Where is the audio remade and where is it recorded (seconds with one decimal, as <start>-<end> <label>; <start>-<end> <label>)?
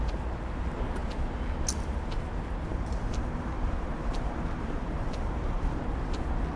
0.0-2.7 recorded; 2.7-5.8 remade; 5.8-6.6 recorded